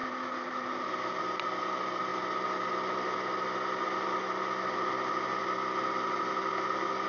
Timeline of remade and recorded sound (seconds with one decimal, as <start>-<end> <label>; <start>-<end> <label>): 0.0-7.1 recorded